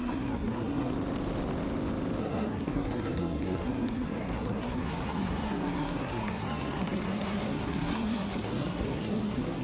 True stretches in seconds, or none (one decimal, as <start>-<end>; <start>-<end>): 0.9-2.2